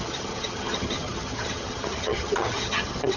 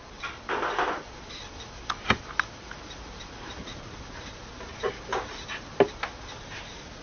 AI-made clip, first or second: first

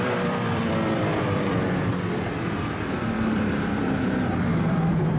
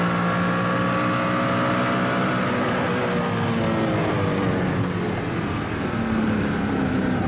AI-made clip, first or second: first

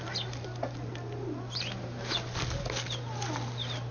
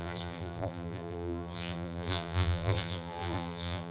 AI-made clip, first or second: second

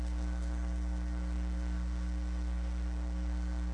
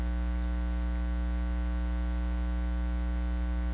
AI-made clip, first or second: first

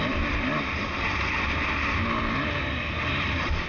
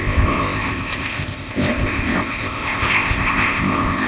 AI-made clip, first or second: second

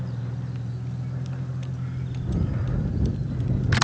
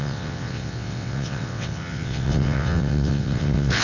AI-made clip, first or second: second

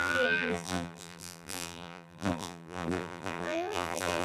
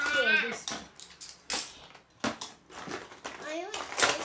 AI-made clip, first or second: first